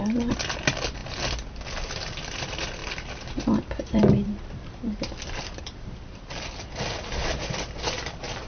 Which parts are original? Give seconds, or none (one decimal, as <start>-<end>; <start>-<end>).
1.0-1.9